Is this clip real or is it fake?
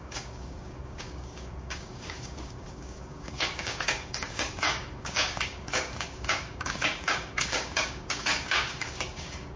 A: fake